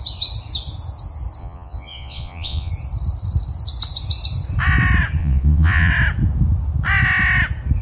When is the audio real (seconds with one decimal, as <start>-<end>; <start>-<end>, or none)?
0.0-1.4; 2.7-5.2; 5.9-7.8